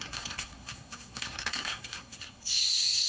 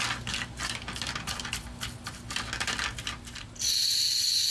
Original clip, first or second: second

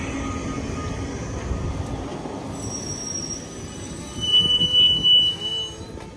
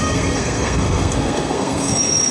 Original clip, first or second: first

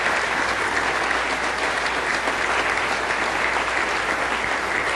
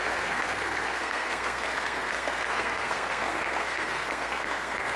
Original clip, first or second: first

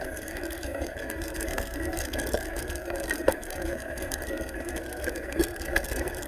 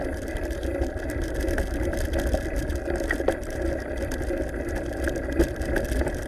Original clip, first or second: second